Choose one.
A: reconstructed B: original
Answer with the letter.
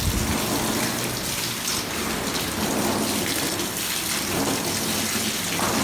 B